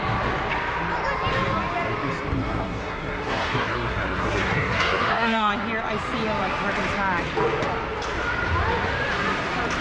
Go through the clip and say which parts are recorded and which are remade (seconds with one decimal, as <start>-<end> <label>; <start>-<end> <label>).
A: 0.0-2.3 recorded; 2.3-5.5 remade; 5.5-9.8 recorded